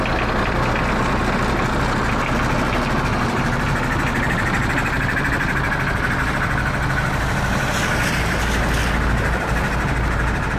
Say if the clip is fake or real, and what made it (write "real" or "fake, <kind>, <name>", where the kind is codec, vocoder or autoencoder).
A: real